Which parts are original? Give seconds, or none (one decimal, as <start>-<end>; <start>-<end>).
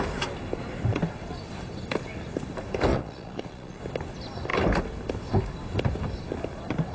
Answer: 0.0-2.9; 3.8-6.9